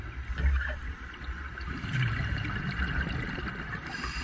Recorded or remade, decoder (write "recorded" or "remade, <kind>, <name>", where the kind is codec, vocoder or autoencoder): recorded